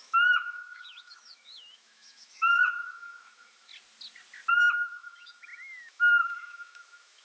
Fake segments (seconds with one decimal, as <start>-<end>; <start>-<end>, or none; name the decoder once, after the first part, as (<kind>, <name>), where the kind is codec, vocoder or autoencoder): 0.0-3.7 (autoencoder, DAC-VAE); 4.5-7.2

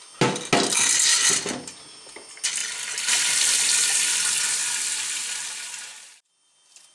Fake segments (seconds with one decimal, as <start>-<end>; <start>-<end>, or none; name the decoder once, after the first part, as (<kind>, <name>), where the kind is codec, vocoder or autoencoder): none

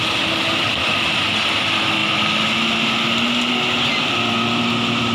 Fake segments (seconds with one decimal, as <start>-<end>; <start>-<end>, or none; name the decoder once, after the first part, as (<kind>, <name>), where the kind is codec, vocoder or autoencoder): none